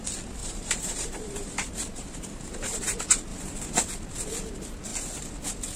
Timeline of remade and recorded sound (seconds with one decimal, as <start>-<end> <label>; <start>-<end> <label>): 0.0-0.4 recorded; 0.4-2.8 remade; 2.8-3.3 recorded; 3.3-3.8 remade; 3.8-5.8 recorded